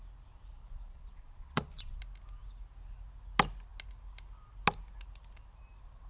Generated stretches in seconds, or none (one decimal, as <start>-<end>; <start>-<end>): 0.5-2.0